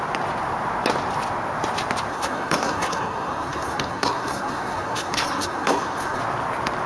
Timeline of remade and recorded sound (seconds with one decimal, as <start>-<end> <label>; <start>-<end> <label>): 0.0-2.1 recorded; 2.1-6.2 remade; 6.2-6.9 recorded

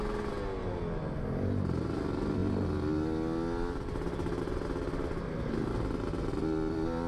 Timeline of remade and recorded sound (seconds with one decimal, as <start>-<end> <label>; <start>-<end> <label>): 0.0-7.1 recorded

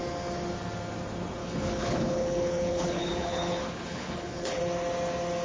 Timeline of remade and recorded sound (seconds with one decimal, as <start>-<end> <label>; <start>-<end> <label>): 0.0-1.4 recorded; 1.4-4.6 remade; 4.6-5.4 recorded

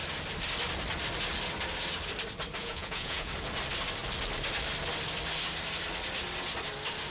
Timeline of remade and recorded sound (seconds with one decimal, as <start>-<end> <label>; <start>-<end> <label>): 0.0-2.6 recorded; 2.6-3.3 remade; 3.3-7.1 recorded

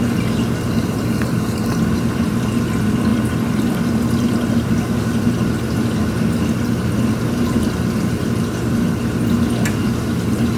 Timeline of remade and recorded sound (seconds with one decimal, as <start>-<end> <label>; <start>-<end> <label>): 0.0-10.6 recorded

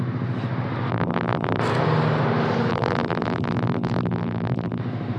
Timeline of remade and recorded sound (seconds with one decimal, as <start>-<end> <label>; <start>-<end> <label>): 0.0-0.9 recorded; 0.9-1.6 remade; 1.6-2.7 recorded; 2.7-4.8 remade; 4.8-5.2 recorded

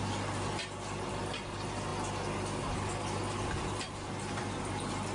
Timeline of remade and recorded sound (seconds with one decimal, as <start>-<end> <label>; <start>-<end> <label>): 0.0-5.1 recorded